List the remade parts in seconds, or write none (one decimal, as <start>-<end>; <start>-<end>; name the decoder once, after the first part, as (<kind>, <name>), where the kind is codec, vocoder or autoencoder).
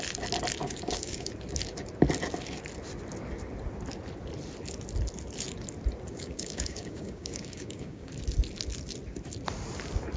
0.6-1.3 (codec, DAC); 6.1-8.1